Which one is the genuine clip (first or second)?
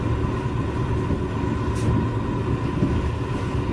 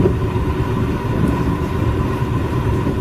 first